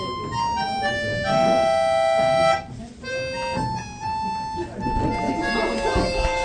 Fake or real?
real